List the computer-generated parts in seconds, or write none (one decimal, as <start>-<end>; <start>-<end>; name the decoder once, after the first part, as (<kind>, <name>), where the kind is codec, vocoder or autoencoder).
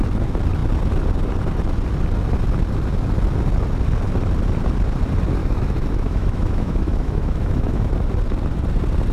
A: 5.4-7.9 (autoencoder, DAC-VAE)